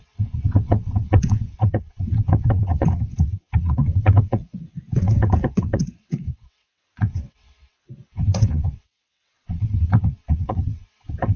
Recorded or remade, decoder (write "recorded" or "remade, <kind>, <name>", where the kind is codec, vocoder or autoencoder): remade, vocoder, WaveNeXt